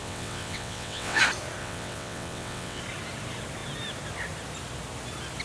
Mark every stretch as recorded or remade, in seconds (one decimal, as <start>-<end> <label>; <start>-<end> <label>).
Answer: 0.0-1.2 remade; 1.2-1.6 recorded; 1.6-2.8 remade; 2.8-5.4 recorded